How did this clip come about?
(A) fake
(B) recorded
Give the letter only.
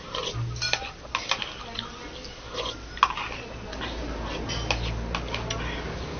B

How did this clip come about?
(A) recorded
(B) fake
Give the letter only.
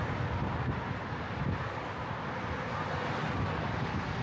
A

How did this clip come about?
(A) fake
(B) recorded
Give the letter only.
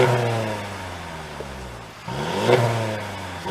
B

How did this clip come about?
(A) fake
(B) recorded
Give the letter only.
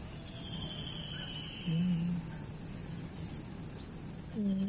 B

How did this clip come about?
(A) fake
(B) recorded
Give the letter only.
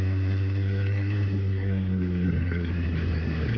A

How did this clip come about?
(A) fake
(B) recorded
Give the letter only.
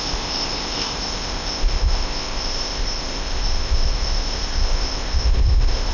A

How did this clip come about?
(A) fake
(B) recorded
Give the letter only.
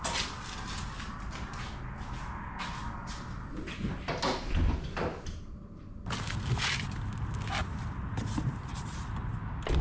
B